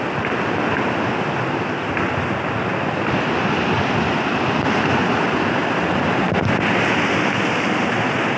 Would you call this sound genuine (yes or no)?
yes